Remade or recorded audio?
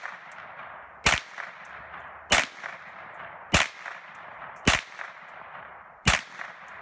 recorded